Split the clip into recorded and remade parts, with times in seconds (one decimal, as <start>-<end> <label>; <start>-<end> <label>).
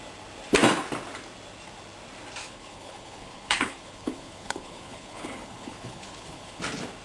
0.0-2.4 recorded; 2.4-6.6 remade; 6.6-7.0 recorded